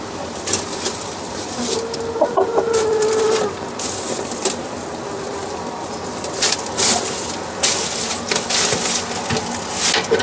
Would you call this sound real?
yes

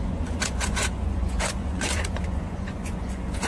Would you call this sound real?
no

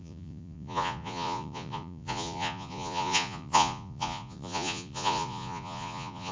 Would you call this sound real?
no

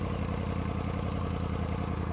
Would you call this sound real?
yes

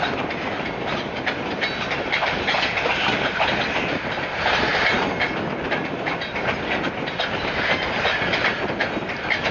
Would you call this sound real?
yes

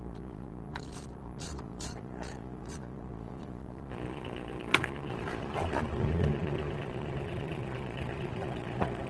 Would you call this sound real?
no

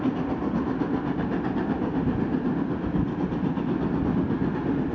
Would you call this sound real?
yes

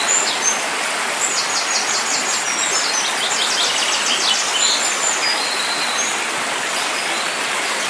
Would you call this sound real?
yes